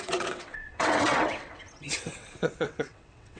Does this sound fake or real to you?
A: fake